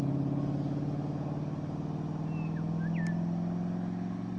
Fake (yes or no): no